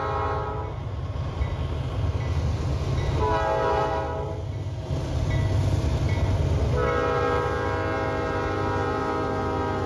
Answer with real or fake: real